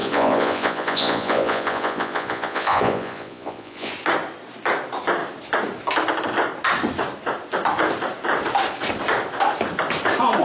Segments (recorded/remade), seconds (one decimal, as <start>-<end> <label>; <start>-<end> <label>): 0.0-3.9 remade; 3.9-10.4 recorded